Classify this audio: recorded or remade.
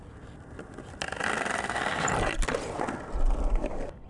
recorded